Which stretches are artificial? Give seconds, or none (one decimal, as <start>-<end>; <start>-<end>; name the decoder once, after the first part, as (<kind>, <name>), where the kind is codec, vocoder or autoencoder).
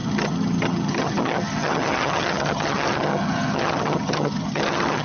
0.0-5.0 (vocoder, HiFi-GAN)